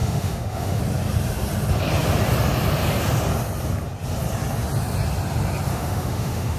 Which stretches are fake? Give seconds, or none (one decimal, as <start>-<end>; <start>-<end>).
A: 0.0-0.8; 5.7-6.6